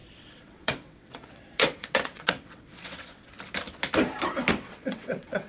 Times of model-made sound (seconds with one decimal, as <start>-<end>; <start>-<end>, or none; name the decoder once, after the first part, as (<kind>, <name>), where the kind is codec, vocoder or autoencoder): 0.0-3.3 (vocoder, WaveNeXt); 4.5-5.5